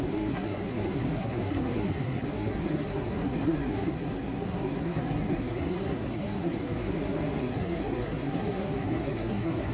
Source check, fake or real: fake